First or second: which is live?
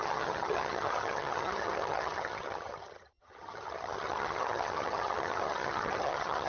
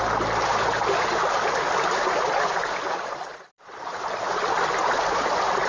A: second